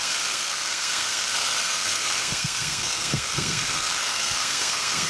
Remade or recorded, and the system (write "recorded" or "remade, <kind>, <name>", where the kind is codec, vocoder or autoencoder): remade, codec, SNAC